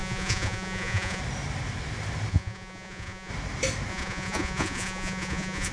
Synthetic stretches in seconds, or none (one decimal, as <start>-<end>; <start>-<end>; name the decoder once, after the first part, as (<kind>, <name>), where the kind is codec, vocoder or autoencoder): 0.0-1.2 (vocoder, Vocos); 2.3-3.3; 3.9-5.7